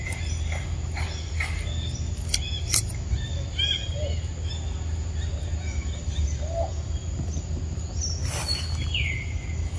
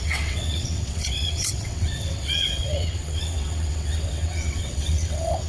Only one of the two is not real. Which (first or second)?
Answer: second